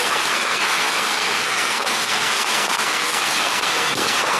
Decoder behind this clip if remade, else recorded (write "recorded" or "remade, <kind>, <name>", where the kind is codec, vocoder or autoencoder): remade, codec, SNAC